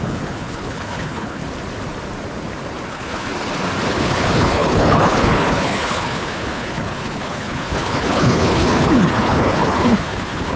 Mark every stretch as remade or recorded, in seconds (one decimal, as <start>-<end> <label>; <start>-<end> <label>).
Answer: 0.0-1.4 remade; 1.4-2.9 recorded; 2.9-3.3 remade; 3.3-3.9 recorded; 3.9-10.6 remade